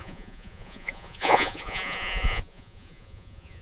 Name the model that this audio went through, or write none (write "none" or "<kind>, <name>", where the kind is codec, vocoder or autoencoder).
vocoder, Vocos